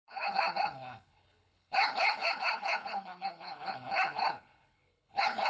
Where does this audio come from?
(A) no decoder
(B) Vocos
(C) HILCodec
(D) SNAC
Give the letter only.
C